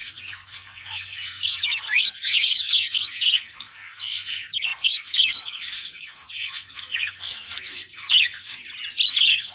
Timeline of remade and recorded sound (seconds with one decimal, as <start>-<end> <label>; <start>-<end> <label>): 0.0-8.6 remade; 8.6-9.1 recorded; 9.1-9.5 remade